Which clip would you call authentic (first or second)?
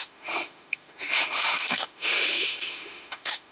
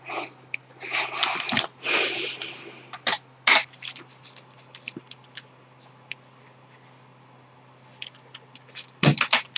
second